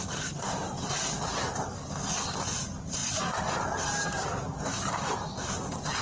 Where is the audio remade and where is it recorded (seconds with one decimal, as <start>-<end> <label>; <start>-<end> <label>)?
0.0-6.0 recorded